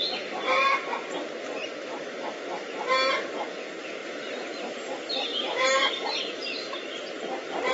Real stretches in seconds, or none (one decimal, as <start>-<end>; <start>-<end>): 1.6-3.6